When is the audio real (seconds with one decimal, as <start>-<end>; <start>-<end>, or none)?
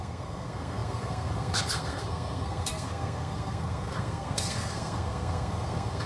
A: none